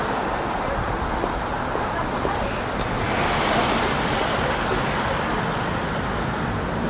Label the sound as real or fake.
real